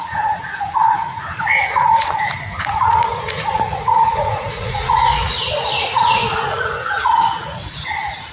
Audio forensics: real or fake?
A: fake